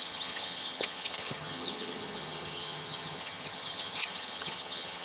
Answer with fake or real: fake